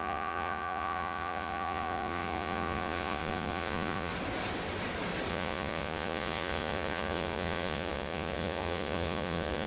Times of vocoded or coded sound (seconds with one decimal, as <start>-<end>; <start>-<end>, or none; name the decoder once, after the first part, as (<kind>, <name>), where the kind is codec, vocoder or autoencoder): 0.0-4.1 (vocoder, Vocos); 5.3-9.7